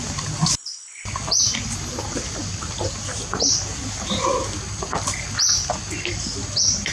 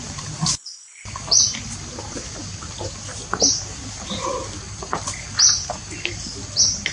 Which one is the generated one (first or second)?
second